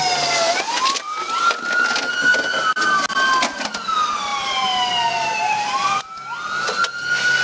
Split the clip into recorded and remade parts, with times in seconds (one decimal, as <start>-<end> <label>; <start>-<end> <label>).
0.0-4.3 recorded; 4.3-6.0 remade; 6.0-7.4 recorded